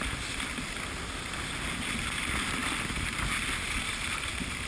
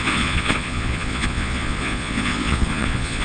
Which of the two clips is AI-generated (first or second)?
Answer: second